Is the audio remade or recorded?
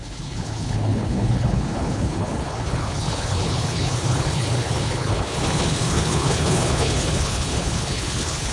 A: remade